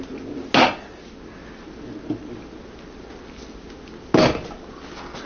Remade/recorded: recorded